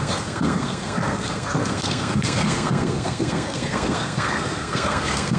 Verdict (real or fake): fake